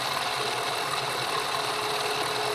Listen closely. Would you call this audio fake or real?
real